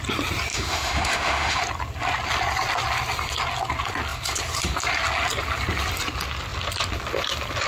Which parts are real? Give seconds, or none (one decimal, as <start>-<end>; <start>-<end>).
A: 0.0-0.5; 1.6-7.7